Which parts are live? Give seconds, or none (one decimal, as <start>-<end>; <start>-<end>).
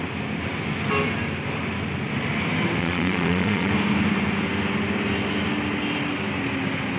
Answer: 0.0-2.8; 3.7-7.0